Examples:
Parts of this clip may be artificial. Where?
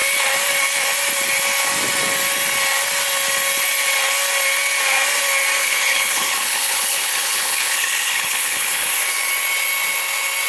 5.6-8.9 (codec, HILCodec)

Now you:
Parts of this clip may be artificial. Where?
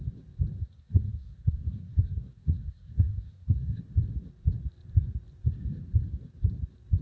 0.6-3.8 (codec, SNAC)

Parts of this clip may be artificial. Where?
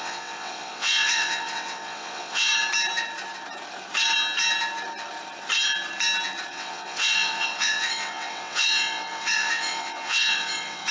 0.0-2.5 (vocoder, WaveNeXt); 6.5-10.9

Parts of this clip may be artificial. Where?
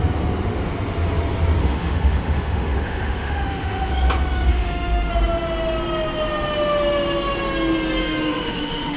1.6-3.9 (autoencoder, DAC-VAE); 4.5-5.1; 8.0-9.0